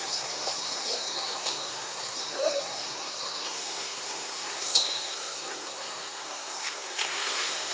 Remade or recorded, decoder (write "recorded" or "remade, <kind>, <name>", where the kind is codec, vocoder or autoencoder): remade, codec, SNAC